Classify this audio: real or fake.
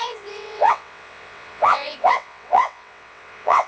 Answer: fake